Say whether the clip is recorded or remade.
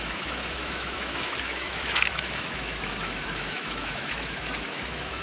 remade